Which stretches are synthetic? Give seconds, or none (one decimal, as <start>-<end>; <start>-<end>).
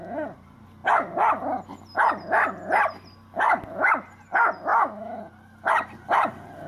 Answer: 4.7-5.2